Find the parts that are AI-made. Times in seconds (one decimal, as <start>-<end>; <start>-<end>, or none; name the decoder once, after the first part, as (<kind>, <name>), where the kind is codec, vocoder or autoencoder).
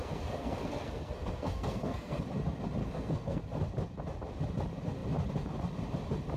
0.0-2.2 (codec, SNAC); 2.8-3.4